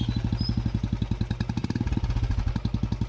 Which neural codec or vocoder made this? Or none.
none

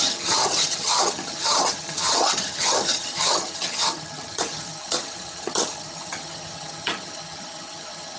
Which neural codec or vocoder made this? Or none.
vocoder, HiFi-GAN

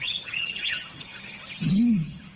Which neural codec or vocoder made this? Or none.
vocoder, HiFi-GAN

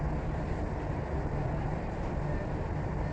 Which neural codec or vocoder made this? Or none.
none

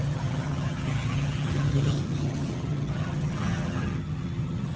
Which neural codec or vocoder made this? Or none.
vocoder, HiFi-GAN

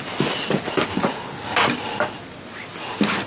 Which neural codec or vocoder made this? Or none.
none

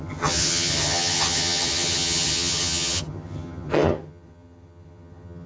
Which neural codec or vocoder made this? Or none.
vocoder, HiFi-GAN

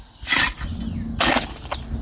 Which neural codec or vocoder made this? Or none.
none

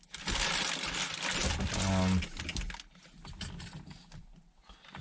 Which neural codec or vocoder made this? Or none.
none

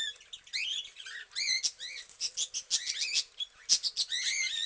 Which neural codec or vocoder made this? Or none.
none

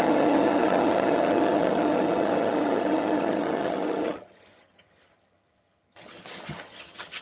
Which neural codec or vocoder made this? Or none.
vocoder, HiFi-GAN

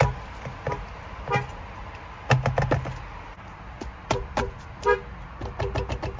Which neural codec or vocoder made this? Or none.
none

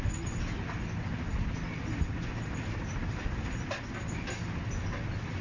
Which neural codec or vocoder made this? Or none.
none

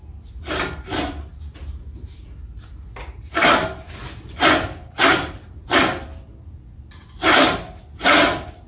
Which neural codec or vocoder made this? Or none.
none